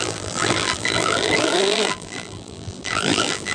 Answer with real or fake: fake